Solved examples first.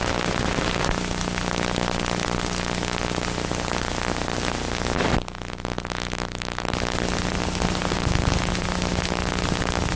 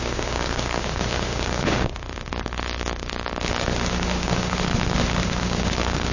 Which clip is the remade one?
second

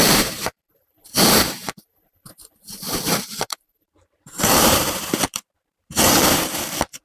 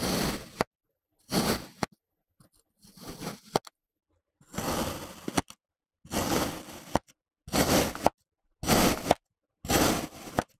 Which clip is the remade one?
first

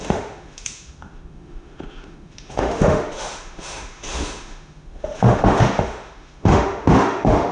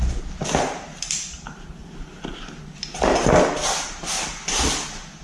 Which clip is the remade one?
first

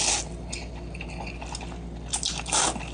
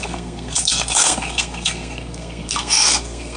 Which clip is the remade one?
second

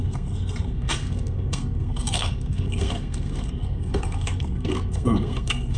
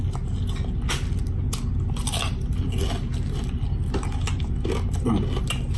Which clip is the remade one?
first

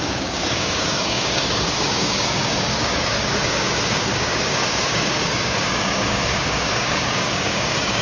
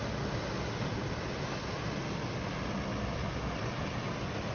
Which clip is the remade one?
first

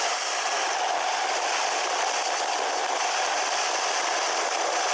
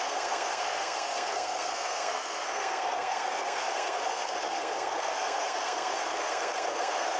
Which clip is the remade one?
second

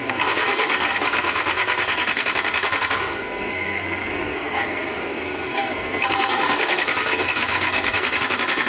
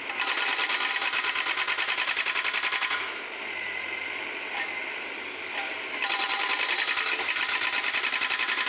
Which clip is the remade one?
first